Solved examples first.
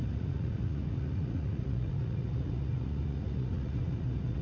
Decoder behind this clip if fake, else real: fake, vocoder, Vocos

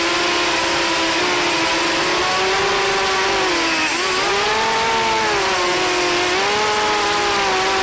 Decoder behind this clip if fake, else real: real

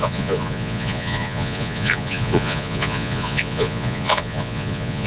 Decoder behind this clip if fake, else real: fake, vocoder, Vocos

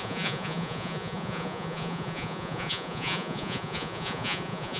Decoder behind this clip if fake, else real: fake, vocoder, Vocos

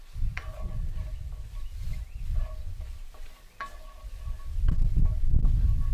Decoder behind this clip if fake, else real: real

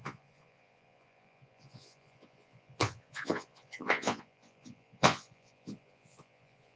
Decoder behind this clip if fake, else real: fake, vocoder, Vocos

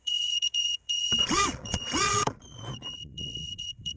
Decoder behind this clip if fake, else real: fake, vocoder, Vocos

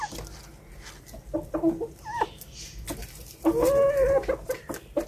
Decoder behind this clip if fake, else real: real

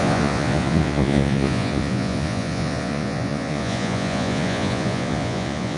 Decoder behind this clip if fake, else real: fake, vocoder, Vocos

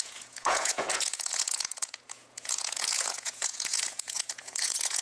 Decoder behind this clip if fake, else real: fake, vocoder, Vocos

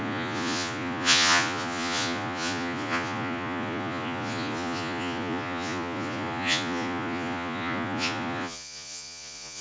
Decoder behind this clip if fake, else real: fake, vocoder, Vocos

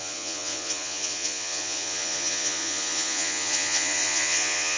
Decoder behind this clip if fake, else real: fake, vocoder, Vocos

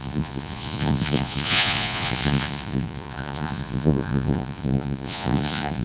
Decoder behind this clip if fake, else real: fake, vocoder, Vocos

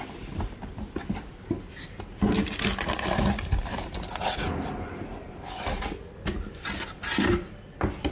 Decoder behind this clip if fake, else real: real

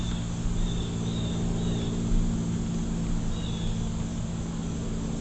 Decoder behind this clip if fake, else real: real